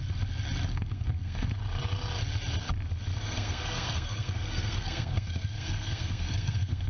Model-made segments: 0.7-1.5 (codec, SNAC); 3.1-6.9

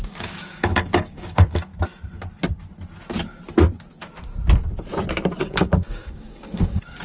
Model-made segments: 0.0-1.7 (codec, DAC); 5.4-7.0

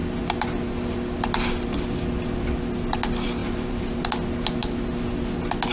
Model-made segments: 3.4-4.0 (vocoder, BigVGAN v2)

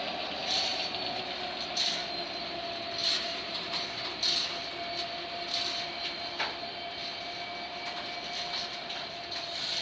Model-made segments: 3.0-4.2 (vocoder, BigVGAN v2)

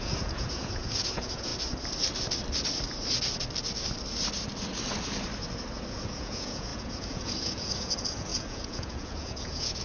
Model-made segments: 0.0-1.5 (vocoder, Vocos); 5.9-9.8